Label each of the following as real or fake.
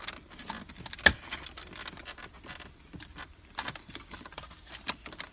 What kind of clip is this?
fake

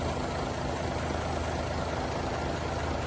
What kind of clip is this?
real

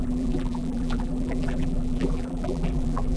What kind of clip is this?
fake